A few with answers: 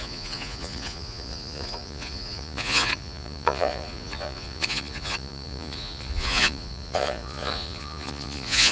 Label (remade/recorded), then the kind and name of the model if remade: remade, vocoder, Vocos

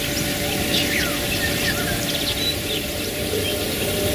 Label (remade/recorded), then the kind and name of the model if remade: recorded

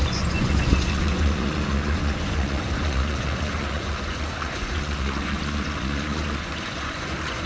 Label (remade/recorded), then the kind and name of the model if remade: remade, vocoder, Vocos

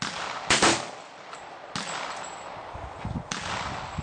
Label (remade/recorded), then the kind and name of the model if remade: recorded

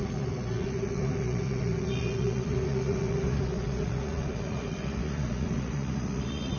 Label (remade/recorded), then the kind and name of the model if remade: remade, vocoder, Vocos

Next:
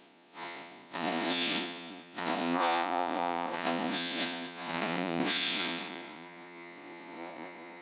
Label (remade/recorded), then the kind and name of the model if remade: remade, vocoder, Vocos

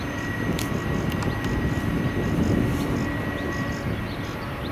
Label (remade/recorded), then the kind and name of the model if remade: recorded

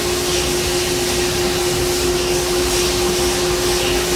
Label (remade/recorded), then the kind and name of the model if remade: recorded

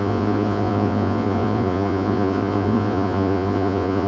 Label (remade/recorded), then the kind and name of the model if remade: remade, vocoder, Vocos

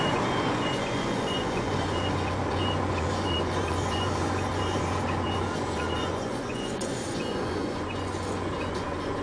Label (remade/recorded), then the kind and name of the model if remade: remade, vocoder, Vocos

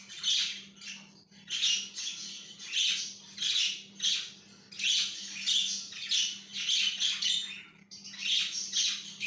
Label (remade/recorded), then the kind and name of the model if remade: recorded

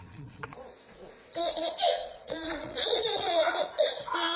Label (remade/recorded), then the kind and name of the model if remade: remade, vocoder, Vocos